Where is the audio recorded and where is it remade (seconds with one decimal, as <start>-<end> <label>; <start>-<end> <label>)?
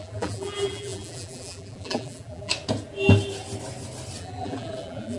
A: 0.0-2.5 remade; 2.5-4.2 recorded; 4.2-5.2 remade